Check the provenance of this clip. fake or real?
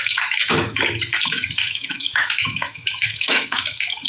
fake